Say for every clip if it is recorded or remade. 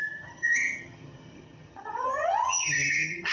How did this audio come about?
remade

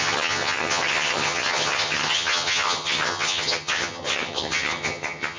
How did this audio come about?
remade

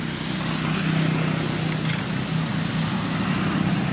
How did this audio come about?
recorded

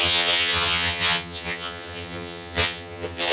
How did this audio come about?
remade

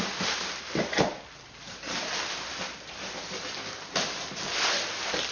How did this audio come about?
recorded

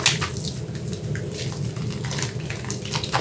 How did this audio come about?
recorded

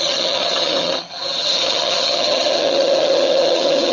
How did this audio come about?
remade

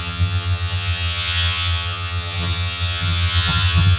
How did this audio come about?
remade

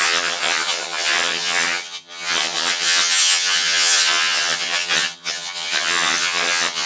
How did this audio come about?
remade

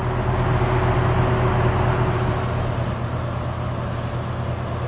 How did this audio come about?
recorded